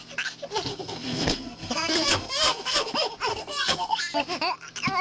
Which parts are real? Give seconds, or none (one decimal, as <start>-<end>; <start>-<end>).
0.0-0.7; 2.9-3.3; 4.0-5.0